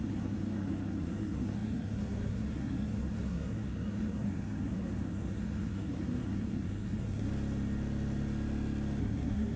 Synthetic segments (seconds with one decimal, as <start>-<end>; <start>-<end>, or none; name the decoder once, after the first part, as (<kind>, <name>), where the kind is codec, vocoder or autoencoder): 0.0-7.3 (codec, SNAC); 9.0-9.6